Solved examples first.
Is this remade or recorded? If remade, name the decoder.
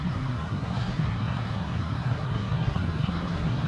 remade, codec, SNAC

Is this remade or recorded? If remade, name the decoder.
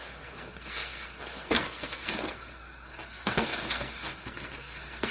remade, codec, SNAC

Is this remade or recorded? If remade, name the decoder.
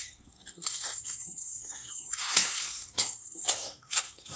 remade, codec, SNAC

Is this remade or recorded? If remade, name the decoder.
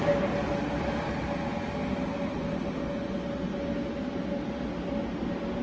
recorded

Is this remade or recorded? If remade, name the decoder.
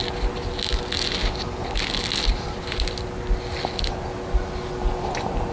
recorded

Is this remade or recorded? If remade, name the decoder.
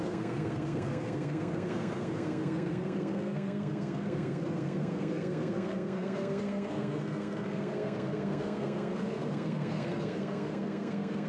remade, codec, SNAC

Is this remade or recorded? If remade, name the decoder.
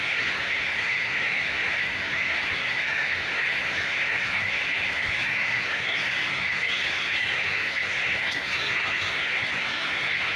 remade, codec, SNAC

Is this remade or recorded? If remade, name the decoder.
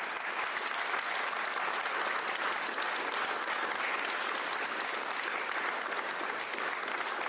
recorded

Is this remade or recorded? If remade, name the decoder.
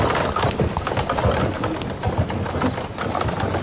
recorded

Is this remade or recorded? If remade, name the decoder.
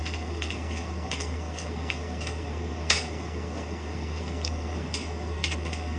remade, codec, SNAC